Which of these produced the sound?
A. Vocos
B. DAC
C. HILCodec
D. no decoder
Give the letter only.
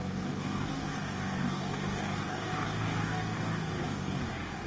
B